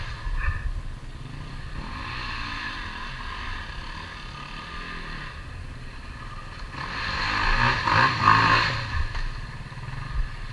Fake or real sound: real